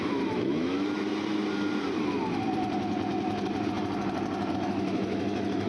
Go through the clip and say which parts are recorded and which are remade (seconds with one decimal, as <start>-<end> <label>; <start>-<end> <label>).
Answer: 0.0-1.1 remade; 1.1-4.5 recorded; 4.5-5.7 remade